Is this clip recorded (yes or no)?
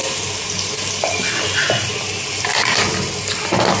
yes